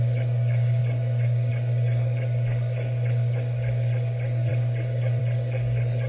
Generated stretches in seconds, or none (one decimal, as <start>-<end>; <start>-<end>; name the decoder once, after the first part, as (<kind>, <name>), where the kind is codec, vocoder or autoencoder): 0.0-6.1 (codec, DAC)